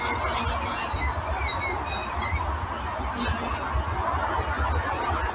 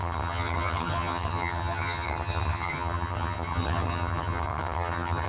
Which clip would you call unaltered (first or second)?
first